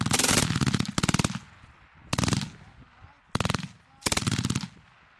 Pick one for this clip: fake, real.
real